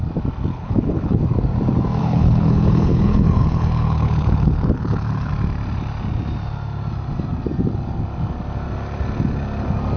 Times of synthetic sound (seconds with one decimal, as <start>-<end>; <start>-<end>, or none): 0.5-1.2; 2.0-5.3